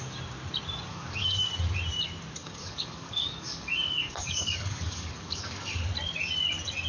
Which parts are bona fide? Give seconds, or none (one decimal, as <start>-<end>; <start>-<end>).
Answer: 0.0-0.9; 1.5-2.4; 5.8-6.9